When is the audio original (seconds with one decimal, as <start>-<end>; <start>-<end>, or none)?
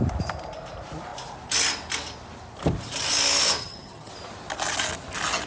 0.0-3.6; 4.1-5.5